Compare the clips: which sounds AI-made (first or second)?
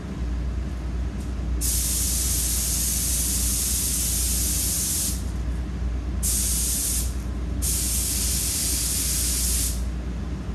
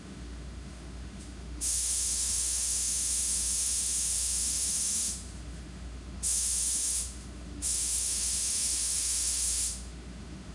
second